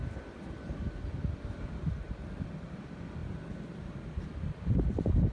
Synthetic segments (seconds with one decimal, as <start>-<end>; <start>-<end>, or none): 0.0-2.8; 3.2-4.2